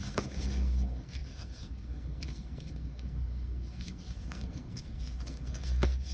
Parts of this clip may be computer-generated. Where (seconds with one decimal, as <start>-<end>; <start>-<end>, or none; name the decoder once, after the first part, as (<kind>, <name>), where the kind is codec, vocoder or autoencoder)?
0.0-6.1 (codec, SNAC)